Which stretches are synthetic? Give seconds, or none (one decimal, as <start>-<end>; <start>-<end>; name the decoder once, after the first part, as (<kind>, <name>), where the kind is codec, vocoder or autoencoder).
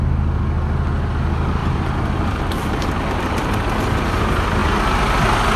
1.6-3.7 (vocoder, BigVGAN v2)